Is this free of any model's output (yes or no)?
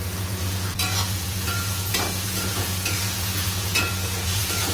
no